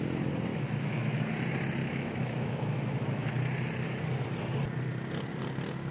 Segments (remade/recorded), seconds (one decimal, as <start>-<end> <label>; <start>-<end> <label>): 0.0-0.5 recorded; 0.5-1.3 remade; 1.3-1.8 recorded; 1.8-3.3 remade; 3.3-5.9 recorded